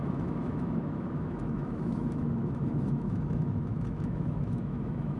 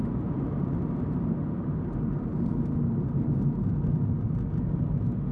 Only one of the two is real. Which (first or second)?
second